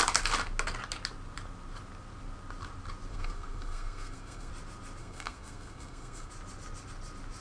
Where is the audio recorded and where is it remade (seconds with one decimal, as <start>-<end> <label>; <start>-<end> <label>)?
0.0-3.1 recorded; 3.1-4.5 remade; 4.5-5.0 recorded; 5.0-6.3 remade; 6.3-7.4 recorded